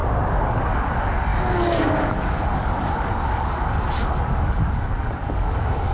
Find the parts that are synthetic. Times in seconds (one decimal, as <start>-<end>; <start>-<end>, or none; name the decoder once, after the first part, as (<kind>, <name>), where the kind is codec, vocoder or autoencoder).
0.5-5.9 (codec, DAC)